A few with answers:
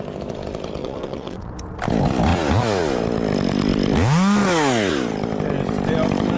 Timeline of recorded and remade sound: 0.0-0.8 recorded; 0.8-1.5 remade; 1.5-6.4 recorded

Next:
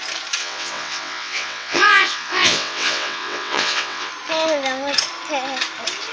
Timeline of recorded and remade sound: 0.0-0.4 recorded; 0.4-4.1 remade; 4.1-6.1 recorded

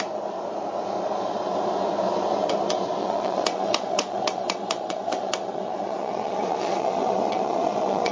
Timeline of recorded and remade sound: 0.0-3.0 recorded; 3.0-8.1 remade

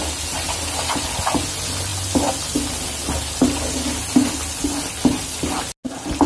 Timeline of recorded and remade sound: 0.0-6.3 recorded

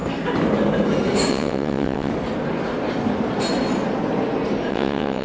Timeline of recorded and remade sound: 0.0-1.3 recorded; 1.3-2.1 remade; 2.1-4.7 recorded; 4.7-5.2 remade